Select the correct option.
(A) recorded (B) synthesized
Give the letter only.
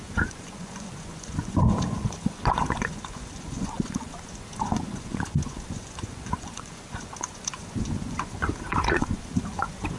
B